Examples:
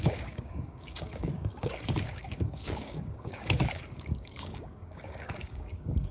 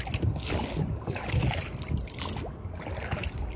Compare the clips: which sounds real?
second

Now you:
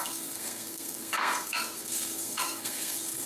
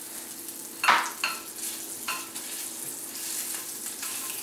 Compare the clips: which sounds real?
second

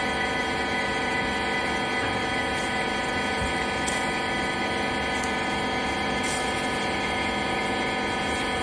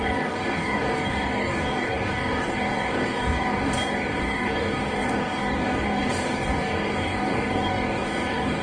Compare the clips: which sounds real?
first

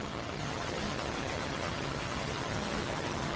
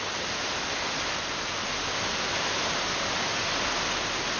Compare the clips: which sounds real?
second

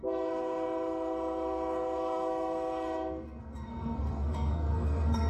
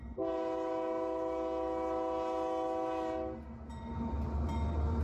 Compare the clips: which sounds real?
second